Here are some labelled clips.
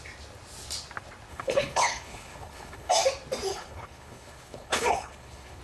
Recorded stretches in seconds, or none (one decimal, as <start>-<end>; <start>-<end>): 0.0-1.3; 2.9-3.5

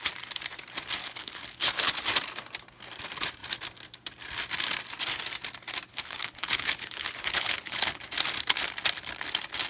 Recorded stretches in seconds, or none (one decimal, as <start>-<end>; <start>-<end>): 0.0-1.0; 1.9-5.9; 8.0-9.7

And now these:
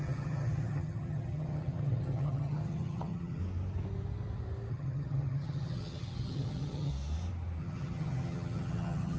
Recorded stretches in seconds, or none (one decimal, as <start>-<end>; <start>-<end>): 3.4-4.7; 6.9-7.6

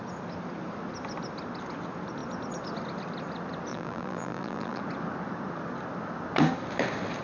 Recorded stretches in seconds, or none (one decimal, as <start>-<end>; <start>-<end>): 0.0-3.7; 4.8-7.2

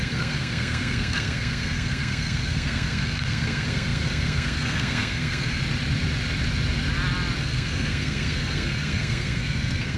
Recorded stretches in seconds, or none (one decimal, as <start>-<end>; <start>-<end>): 5.6-7.4

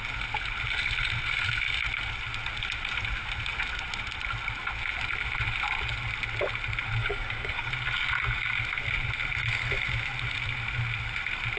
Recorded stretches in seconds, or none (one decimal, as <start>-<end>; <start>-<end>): 0.0-7.0; 7.7-11.6

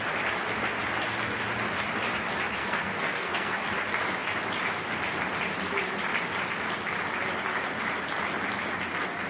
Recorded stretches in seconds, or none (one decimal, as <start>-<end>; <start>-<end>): 0.0-2.6; 3.6-9.3